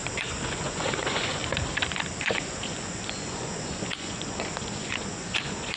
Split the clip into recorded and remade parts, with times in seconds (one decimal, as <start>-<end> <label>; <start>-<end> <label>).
0.0-1.4 remade; 1.4-2.2 recorded; 2.2-5.8 remade